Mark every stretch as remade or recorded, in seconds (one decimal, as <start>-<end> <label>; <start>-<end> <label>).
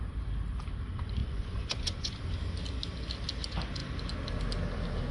0.0-1.2 recorded; 1.2-2.2 remade; 2.2-5.1 recorded